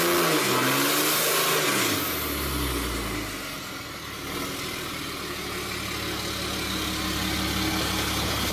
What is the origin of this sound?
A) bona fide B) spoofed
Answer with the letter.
A